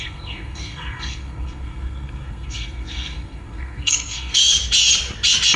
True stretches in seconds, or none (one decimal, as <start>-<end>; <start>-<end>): 4.4-5.6